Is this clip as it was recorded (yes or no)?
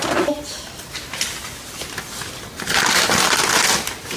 yes